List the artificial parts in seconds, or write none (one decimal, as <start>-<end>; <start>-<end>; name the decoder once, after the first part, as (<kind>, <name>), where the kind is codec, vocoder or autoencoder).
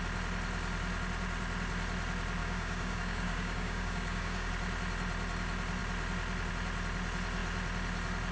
2.4-4.5 (codec, DAC)